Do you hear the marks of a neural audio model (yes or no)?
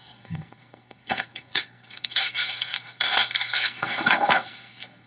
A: yes